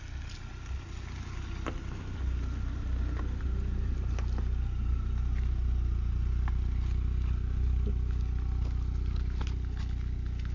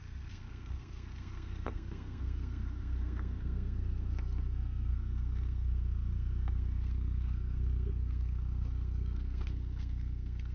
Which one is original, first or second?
first